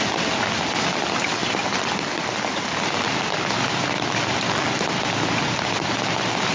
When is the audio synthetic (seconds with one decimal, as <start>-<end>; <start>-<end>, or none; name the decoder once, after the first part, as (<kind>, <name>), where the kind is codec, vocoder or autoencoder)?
none